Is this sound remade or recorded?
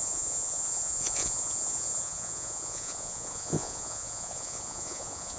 remade